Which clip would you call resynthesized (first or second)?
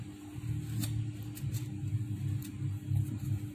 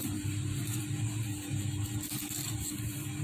second